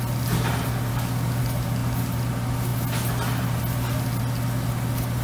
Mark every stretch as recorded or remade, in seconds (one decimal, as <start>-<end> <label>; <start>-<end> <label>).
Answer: 0.0-0.9 recorded; 0.9-1.4 remade; 1.4-5.2 recorded